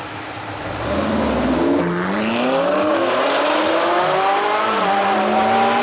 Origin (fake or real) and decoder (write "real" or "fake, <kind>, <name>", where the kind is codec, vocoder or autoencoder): real